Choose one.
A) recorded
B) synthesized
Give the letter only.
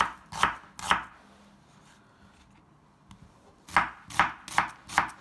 A